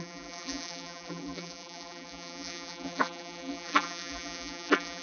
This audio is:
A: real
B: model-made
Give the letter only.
B